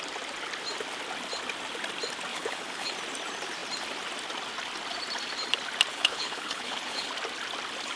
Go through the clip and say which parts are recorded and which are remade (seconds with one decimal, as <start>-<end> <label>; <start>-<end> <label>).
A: 0.0-2.3 recorded; 2.3-2.9 remade; 2.9-5.9 recorded; 5.9-7.1 remade; 7.1-8.0 recorded